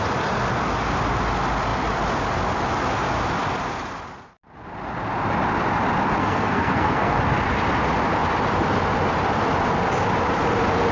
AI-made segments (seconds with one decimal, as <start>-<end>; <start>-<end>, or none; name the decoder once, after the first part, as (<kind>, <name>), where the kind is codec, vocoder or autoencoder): 6.2-7.2 (codec, SNAC)